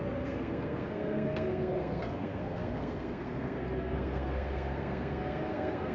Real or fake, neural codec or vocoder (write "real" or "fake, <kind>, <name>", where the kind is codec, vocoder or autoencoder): fake, codec, SNAC